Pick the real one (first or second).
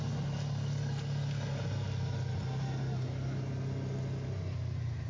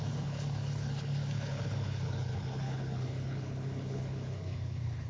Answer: first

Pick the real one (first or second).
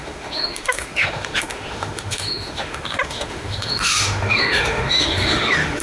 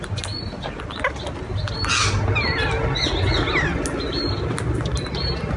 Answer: second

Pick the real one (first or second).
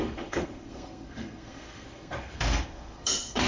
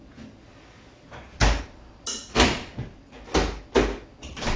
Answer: second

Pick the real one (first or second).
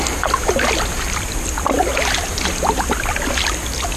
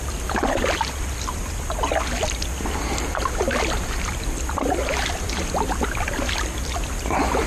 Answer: first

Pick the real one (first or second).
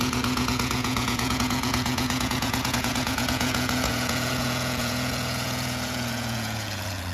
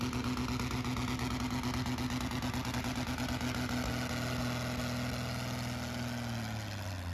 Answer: second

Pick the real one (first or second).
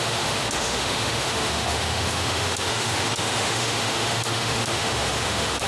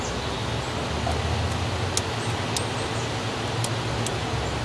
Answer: second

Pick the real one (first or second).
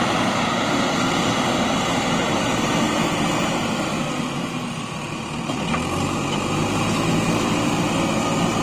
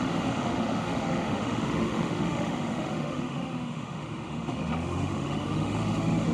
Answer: first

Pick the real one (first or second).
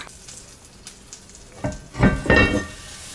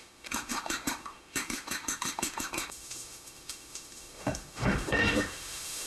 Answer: first